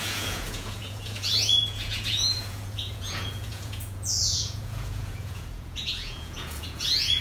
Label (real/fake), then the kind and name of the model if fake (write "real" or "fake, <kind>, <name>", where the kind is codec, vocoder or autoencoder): fake, vocoder, Vocos